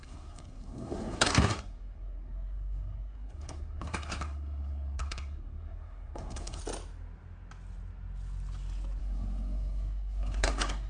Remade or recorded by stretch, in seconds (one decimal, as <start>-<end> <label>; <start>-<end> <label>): 0.0-6.6 remade; 6.6-9.0 recorded; 9.0-10.9 remade